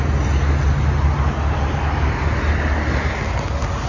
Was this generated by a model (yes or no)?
no